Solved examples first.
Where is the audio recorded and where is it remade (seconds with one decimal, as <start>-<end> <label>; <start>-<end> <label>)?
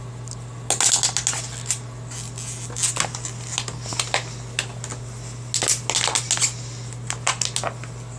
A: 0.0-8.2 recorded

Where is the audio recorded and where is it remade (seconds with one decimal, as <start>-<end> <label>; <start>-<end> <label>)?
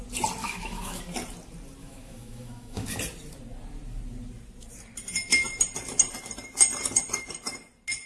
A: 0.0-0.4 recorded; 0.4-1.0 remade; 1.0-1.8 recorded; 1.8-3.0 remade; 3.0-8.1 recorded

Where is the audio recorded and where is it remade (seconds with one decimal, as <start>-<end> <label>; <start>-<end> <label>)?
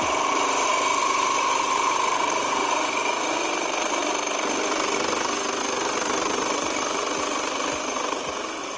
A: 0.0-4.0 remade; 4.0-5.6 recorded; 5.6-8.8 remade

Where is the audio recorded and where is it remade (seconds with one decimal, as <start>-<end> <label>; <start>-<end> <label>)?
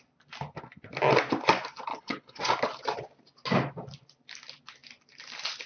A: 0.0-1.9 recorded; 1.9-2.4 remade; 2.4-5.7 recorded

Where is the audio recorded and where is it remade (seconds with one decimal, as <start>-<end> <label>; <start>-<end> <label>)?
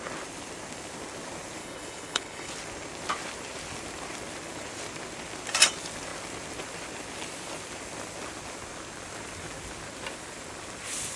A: 0.0-1.6 recorded; 1.6-2.5 remade; 2.5-11.2 recorded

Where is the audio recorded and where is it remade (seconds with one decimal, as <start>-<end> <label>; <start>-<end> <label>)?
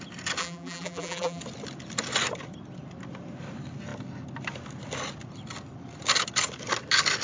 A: 0.0-0.4 recorded; 0.4-1.4 remade; 1.4-7.2 recorded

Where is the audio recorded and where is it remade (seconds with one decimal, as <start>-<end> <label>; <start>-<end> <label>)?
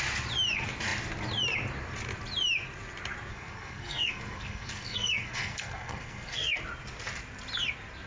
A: 0.0-3.3 recorded; 3.3-6.6 remade; 6.6-8.1 recorded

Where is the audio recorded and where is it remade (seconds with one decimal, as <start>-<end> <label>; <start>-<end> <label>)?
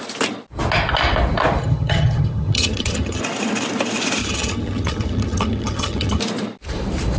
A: 0.0-1.6 recorded; 1.6-3.2 remade; 3.2-4.2 recorded; 4.2-6.2 remade; 6.2-7.2 recorded